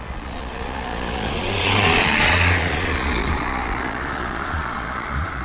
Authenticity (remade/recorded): remade